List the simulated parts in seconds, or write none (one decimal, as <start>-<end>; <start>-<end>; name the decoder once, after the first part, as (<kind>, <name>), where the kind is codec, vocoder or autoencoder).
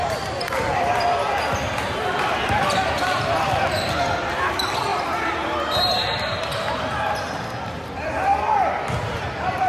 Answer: 0.0-9.7 (vocoder, BigVGAN v2)